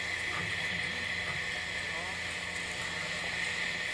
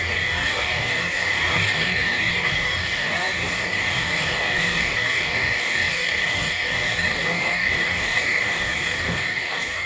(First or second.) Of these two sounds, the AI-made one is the second